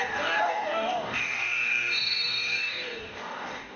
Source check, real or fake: fake